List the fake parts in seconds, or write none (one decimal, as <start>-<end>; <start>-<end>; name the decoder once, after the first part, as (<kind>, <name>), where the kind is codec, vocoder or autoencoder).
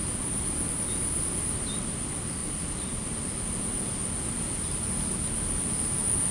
2.4-3.1 (vocoder, BigVGAN v2)